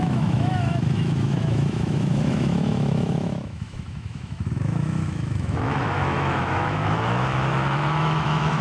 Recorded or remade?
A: remade